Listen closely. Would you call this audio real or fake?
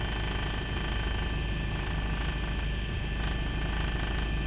real